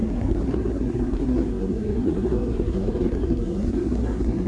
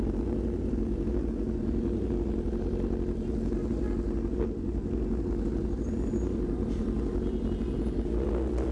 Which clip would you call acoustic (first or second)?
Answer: second